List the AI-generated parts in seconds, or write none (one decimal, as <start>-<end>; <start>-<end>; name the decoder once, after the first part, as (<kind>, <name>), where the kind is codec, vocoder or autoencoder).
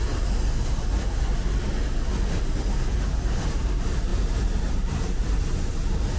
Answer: 4.1-5.4 (vocoder, BigVGAN v2)